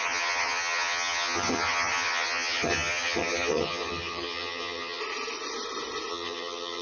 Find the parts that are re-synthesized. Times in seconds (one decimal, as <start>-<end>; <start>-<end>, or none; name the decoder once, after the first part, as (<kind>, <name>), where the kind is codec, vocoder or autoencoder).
0.0-5.0 (vocoder, HiFi-GAN); 6.1-6.8